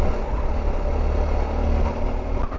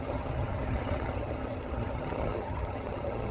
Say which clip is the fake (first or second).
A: second